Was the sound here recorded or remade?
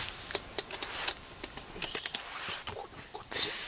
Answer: recorded